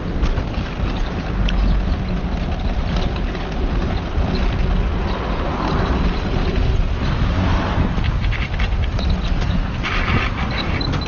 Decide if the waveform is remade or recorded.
recorded